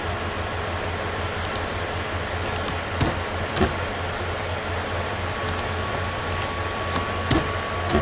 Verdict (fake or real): real